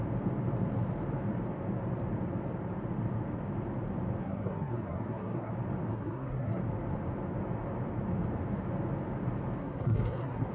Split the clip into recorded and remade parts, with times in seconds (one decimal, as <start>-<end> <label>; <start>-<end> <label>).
0.0-4.2 recorded; 4.2-5.5 remade; 5.5-5.9 recorded; 5.9-6.6 remade; 6.6-9.6 recorded; 9.6-10.5 remade